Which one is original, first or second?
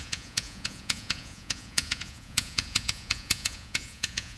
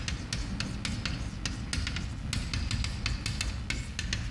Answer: second